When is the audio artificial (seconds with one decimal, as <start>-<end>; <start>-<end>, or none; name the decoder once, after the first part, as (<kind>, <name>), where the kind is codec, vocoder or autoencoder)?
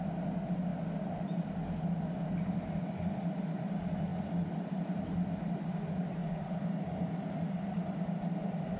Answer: none